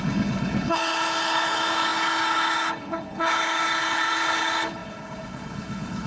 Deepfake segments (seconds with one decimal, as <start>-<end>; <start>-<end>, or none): 0.0-6.1